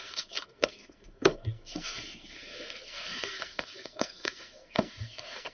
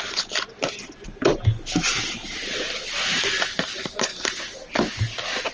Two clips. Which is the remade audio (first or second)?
first